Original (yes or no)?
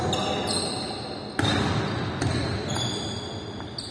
yes